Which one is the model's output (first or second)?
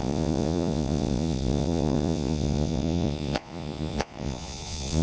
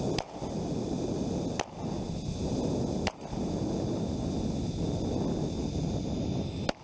first